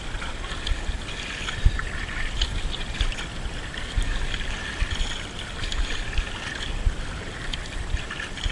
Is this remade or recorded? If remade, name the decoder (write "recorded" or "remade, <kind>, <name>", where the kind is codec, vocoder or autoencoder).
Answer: recorded